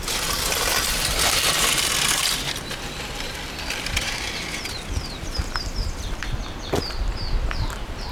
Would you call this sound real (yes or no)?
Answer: no